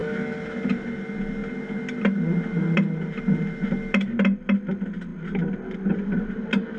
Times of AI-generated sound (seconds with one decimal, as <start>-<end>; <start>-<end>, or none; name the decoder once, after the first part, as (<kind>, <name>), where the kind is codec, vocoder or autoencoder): none